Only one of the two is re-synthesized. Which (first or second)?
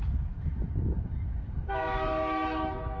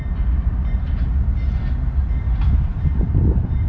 first